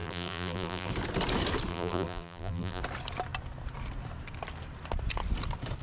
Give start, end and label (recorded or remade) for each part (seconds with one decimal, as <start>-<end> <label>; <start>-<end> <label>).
0.0-0.9 remade; 0.9-1.7 recorded; 1.7-2.8 remade; 2.8-5.8 recorded